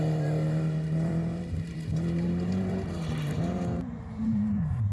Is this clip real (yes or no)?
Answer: no